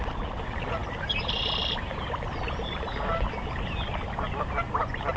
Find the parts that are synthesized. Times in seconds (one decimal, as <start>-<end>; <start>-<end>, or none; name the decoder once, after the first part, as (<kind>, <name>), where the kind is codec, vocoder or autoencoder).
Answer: none